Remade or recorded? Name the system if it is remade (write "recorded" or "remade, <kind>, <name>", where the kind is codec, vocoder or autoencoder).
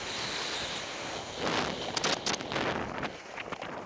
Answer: recorded